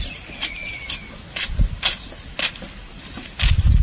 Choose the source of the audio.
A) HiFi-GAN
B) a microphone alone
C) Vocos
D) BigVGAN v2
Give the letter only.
B